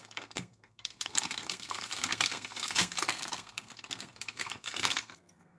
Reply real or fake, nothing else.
fake